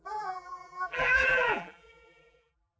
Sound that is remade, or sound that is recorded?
remade